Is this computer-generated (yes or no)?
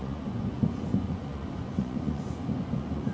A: yes